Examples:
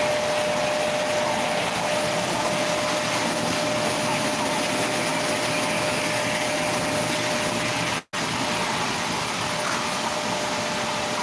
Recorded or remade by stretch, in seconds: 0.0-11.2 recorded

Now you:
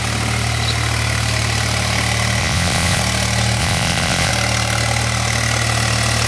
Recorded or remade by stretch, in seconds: 0.0-2.4 recorded; 2.4-3.0 remade; 3.0-3.6 recorded; 3.6-4.3 remade; 4.3-6.3 recorded